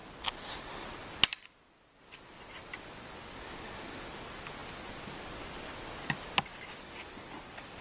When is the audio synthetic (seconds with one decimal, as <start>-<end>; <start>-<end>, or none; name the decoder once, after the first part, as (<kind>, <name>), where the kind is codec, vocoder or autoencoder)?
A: none